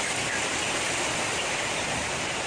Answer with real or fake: real